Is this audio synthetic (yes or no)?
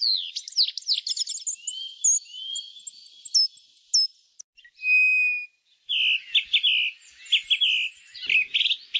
no